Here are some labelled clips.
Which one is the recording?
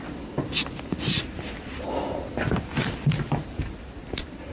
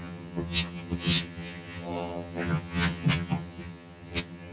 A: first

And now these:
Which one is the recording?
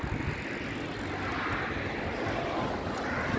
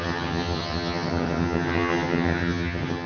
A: first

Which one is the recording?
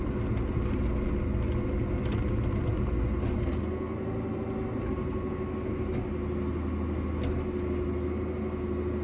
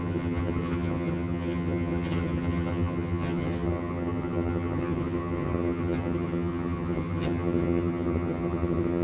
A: first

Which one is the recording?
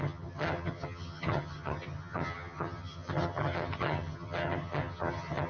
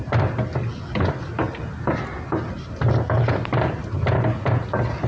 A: second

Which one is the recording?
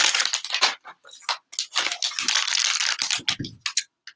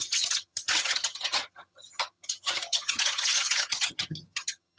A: first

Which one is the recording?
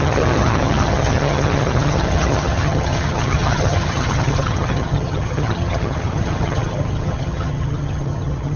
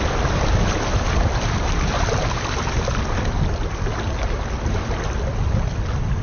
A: second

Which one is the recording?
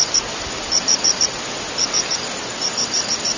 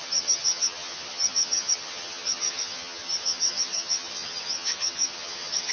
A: first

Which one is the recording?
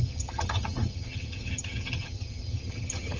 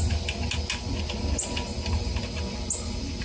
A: second